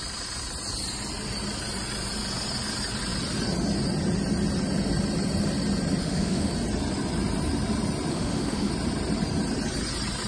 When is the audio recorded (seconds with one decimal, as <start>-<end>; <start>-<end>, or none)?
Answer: 0.0-6.0; 6.5-8.1; 8.7-10.3